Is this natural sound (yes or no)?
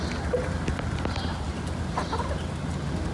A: yes